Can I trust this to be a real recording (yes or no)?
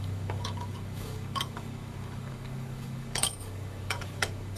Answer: no